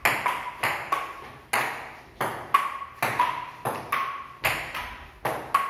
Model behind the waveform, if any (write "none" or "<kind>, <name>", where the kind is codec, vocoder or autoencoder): none